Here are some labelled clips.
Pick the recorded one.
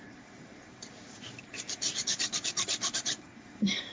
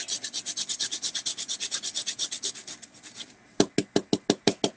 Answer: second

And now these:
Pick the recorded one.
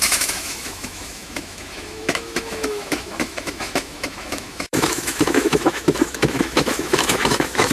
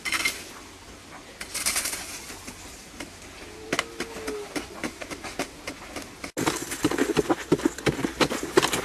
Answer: second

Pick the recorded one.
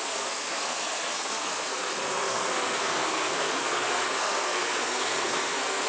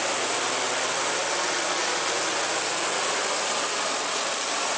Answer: second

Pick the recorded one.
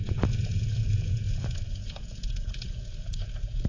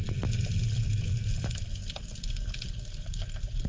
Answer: second